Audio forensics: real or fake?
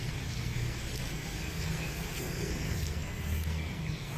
fake